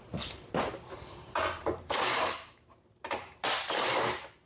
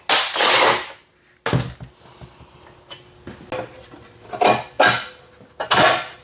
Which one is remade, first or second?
first